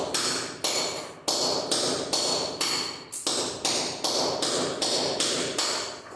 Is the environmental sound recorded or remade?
recorded